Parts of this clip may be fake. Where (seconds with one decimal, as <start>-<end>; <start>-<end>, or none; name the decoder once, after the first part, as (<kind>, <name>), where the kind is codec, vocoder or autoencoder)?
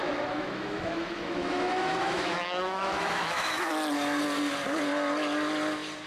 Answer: 0.0-3.7 (autoencoder, DAC-VAE)